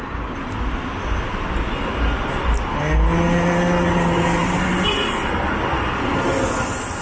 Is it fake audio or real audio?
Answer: real